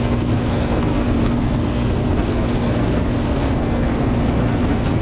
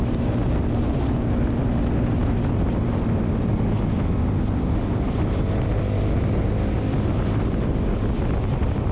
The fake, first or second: first